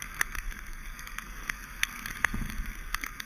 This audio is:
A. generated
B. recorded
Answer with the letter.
A